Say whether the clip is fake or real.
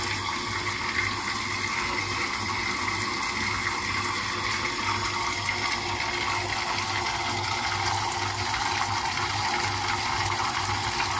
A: real